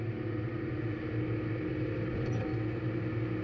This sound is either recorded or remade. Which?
recorded